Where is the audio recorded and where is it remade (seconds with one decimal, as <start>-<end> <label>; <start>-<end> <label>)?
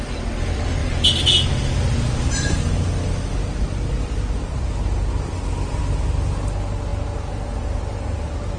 0.0-8.6 recorded